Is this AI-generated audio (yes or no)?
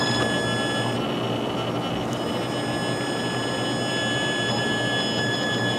no